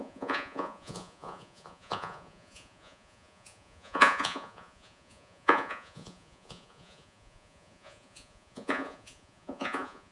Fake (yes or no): yes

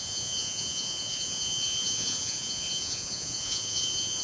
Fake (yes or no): yes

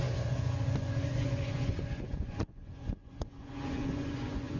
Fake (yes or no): yes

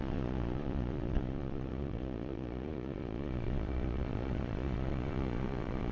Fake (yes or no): yes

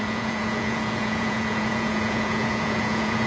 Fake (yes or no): yes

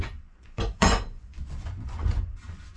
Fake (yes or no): yes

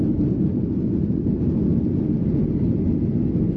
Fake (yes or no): no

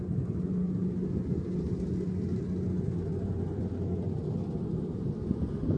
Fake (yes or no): no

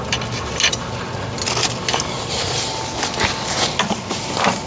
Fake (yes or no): no